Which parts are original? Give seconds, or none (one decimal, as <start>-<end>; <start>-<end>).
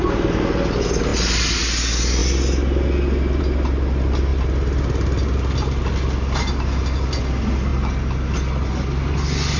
0.0-9.6